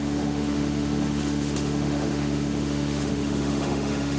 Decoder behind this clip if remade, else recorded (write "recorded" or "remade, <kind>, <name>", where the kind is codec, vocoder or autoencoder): remade, autoencoder, DAC-VAE